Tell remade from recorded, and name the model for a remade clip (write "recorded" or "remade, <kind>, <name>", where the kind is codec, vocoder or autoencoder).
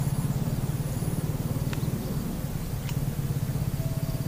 recorded